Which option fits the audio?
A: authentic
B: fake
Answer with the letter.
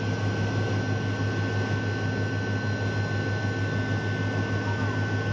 A